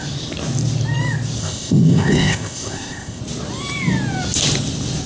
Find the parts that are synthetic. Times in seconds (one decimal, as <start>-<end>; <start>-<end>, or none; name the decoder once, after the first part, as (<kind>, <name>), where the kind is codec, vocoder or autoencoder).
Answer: 1.4-3.2 (codec, ZipCodec)